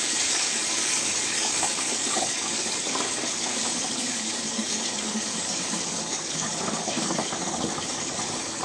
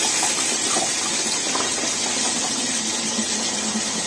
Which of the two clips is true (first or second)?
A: second